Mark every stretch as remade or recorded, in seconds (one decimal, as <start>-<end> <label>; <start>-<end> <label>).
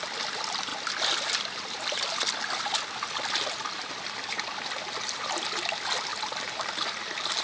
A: 0.0-6.1 recorded; 6.1-6.7 remade; 6.7-7.4 recorded